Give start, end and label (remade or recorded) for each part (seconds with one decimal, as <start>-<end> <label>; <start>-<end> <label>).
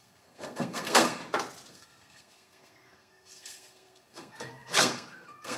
0.0-1.2 remade; 1.2-1.7 recorded; 1.7-5.6 remade